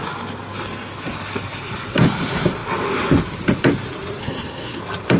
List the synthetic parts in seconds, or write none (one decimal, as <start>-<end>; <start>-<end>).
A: 4.2-4.8